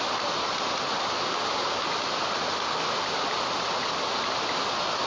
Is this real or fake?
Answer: real